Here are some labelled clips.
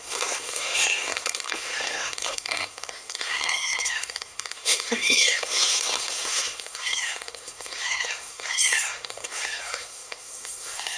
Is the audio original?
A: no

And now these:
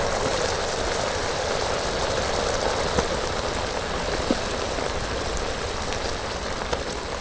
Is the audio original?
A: yes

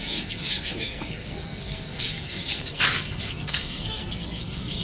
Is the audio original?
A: no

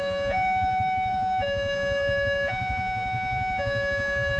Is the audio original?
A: no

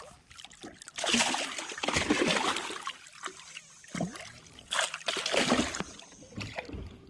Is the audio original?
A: yes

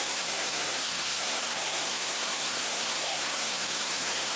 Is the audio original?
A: no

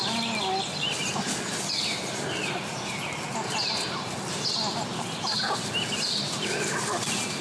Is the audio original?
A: yes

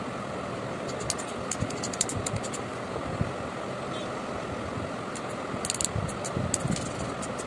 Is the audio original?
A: yes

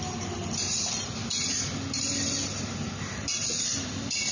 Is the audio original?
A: no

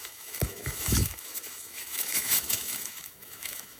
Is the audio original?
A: no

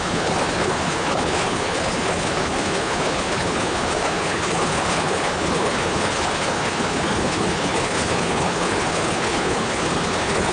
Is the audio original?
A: no